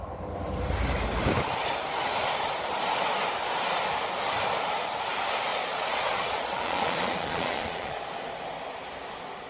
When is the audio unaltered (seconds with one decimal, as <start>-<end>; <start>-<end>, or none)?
0.0-5.5; 8.1-9.5